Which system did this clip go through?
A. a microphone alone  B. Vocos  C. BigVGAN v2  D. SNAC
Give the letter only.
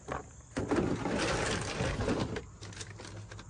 A